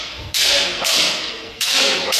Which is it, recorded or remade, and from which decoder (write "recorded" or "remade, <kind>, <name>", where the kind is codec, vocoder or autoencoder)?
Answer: remade, codec, SNAC